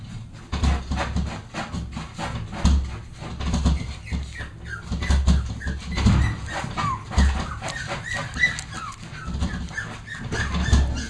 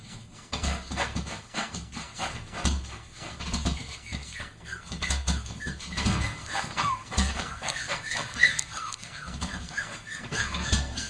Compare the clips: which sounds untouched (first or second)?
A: first